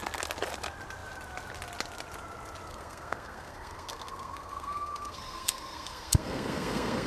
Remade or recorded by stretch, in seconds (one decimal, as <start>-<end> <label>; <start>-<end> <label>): 0.0-2.7 recorded; 2.7-7.1 remade